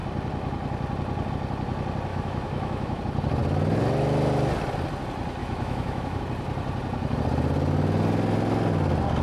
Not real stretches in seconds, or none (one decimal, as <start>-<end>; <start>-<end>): 2.1-3.0; 5.4-6.2

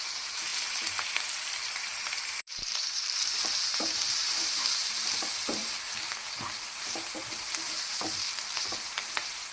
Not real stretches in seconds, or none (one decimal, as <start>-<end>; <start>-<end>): 0.0-9.5